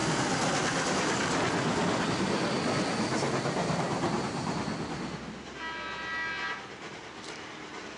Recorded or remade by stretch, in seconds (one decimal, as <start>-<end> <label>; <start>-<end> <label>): 0.0-3.1 recorded; 3.1-4.6 remade; 4.6-8.0 recorded